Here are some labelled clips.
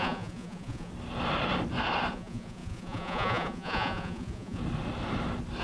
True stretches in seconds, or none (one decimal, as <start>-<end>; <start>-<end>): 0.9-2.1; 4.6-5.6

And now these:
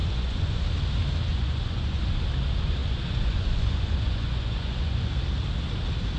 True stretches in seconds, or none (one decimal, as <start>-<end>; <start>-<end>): 0.6-1.3; 2.0-2.8; 5.1-6.2

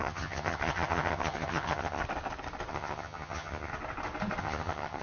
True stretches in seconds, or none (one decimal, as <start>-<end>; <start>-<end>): 2.0-2.7; 3.7-4.4

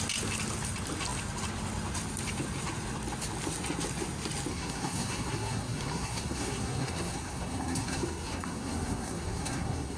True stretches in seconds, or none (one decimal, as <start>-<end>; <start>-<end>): 0.0-4.5

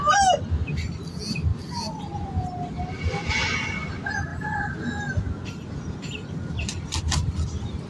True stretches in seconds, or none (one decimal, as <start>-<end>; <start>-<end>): 0.0-1.5; 2.3-7.9

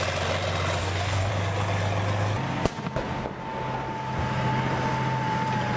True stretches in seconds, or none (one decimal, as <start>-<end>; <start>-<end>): 0.0-0.8; 1.3-5.8

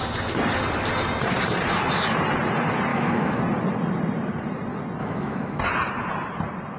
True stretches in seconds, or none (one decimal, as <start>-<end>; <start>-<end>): 0.0-2.9; 3.4-5.0; 5.6-6.8